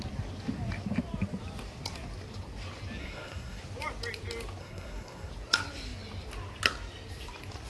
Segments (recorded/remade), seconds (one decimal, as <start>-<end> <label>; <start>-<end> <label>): 0.0-3.0 recorded; 3.0-3.6 remade; 3.6-4.6 recorded; 4.6-5.3 remade; 5.3-7.7 recorded

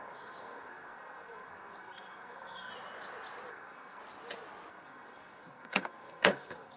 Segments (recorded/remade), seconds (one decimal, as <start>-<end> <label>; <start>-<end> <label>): 0.0-2.7 remade; 2.7-3.5 recorded; 3.5-4.0 remade; 4.0-4.7 recorded; 4.7-6.8 remade

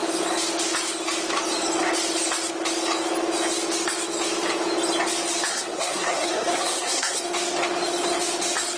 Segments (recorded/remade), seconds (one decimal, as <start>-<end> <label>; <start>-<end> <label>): 0.0-5.5 recorded; 5.5-7.2 remade; 7.2-8.8 recorded

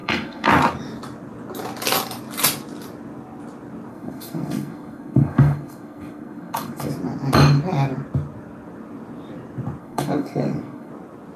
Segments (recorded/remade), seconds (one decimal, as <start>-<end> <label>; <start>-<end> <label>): 0.0-0.5 remade; 0.5-3.9 recorded; 3.9-6.9 remade; 6.9-9.8 recorded; 9.8-10.9 remade; 10.9-11.4 recorded

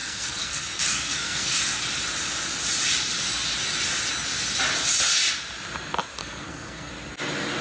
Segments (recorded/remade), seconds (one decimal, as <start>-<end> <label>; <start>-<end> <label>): 0.0-1.6 remade; 1.6-6.2 recorded; 6.2-6.9 remade; 6.9-7.6 recorded

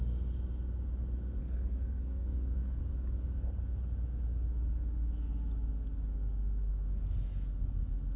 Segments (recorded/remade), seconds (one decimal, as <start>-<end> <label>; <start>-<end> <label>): 0.0-1.4 recorded; 1.4-2.8 remade; 2.8-8.2 recorded